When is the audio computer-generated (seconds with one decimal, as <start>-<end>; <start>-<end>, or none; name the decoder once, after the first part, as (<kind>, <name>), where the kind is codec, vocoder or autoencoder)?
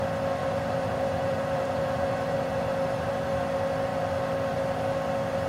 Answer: 0.4-3.1 (vocoder, BigVGAN v2)